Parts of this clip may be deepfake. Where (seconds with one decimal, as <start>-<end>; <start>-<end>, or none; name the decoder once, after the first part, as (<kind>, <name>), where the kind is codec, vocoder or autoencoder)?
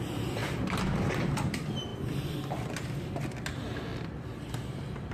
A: none